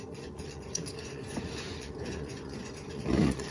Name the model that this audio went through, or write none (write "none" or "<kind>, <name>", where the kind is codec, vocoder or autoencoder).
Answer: vocoder, Vocos